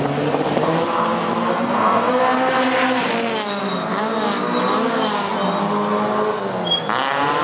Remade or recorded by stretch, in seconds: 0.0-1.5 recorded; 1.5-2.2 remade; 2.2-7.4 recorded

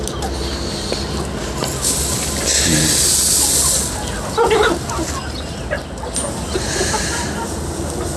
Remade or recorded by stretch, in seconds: 0.0-8.2 recorded

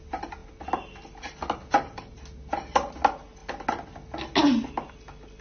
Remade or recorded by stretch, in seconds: 0.0-5.4 recorded

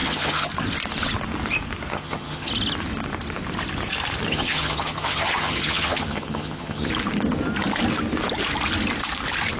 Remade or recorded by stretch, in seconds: 0.0-0.5 remade; 0.5-1.9 recorded; 1.9-2.5 remade; 2.5-4.3 recorded; 4.3-6.9 remade; 6.9-9.6 recorded

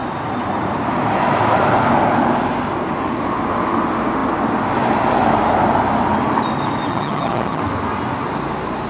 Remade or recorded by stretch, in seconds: 0.0-6.9 recorded; 6.9-7.6 remade; 7.6-8.9 recorded

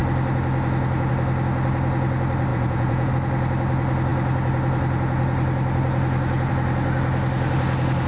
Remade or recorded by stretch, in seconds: 0.0-2.5 recorded; 2.5-3.1 remade; 3.1-8.1 recorded